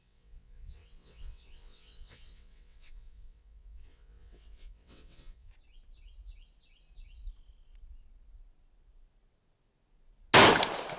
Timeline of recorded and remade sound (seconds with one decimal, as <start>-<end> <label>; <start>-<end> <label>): 0.0-5.5 remade; 5.5-11.0 recorded